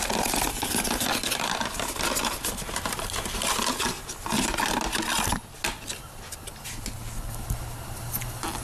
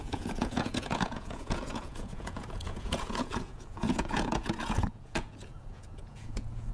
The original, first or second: first